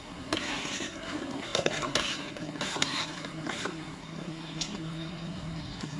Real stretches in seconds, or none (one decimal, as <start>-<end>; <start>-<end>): none